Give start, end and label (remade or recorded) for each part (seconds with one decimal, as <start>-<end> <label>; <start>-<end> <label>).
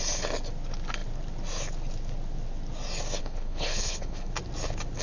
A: 0.0-3.2 recorded; 3.2-4.3 remade; 4.3-5.0 recorded